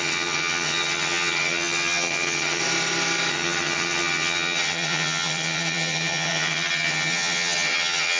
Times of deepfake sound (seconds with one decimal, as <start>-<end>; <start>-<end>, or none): 0.0-2.6; 3.3-8.2